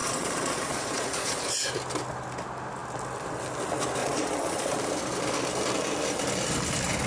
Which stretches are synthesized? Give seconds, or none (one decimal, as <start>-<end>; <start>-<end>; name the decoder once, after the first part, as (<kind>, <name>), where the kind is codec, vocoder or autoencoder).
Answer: 0.0-1.4 (vocoder, Vocos); 4.0-4.9